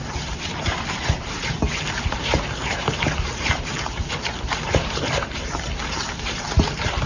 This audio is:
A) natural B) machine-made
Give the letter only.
B